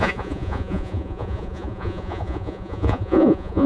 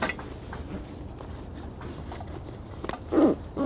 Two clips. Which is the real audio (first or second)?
second